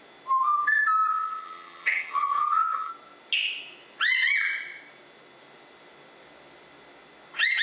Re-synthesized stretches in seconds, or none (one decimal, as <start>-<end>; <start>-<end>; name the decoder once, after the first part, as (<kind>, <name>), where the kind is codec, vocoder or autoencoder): 1.1-2.9 (vocoder, HiFi-GAN)